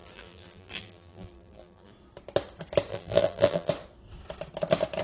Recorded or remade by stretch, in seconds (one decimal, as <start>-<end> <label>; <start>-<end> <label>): 0.0-1.9 remade; 1.9-2.9 recorded; 2.9-3.7 remade; 3.7-5.0 recorded